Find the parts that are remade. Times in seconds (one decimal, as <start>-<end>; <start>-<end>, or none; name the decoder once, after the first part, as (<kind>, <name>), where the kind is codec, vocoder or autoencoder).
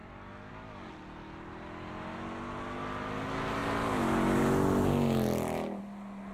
none